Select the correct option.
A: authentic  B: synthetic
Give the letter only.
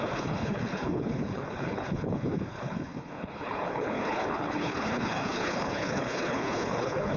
B